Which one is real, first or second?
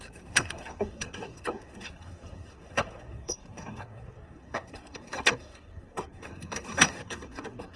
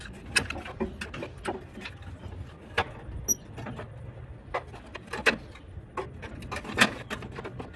second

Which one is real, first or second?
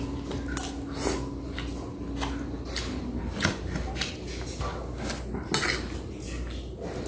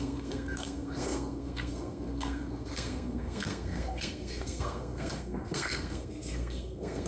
first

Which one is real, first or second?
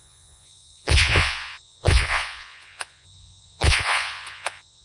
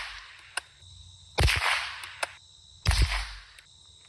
second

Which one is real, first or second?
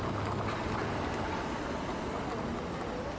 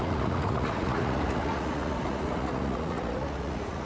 first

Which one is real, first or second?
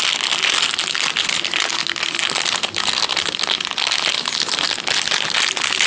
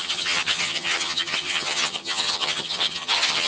first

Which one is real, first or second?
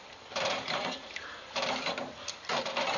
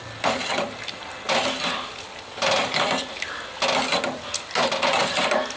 second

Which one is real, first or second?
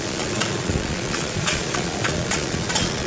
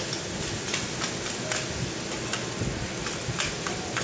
second